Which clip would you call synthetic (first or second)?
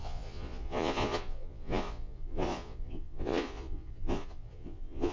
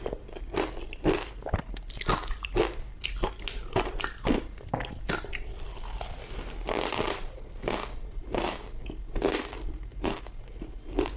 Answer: first